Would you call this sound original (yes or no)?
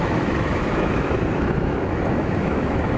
no